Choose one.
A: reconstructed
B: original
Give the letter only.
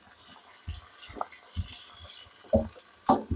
B